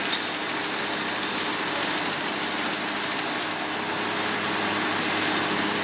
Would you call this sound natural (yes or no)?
yes